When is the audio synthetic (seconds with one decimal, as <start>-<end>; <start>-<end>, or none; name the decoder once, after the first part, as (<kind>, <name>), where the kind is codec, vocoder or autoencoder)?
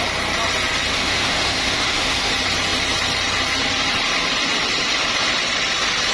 0.9-2.3 (autoencoder, DAC-VAE)